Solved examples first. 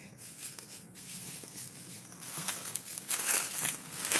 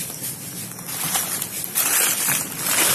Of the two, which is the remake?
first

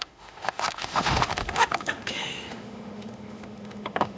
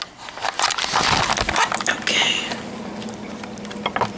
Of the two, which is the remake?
first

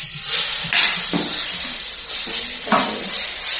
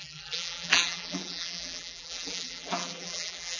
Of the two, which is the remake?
second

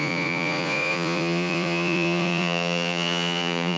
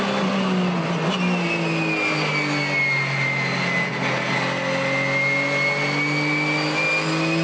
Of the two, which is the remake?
first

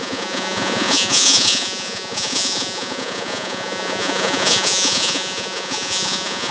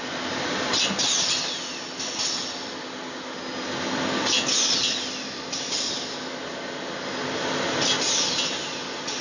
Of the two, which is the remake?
first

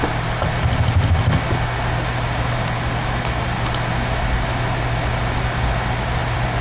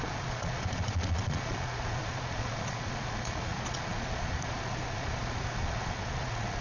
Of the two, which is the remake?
second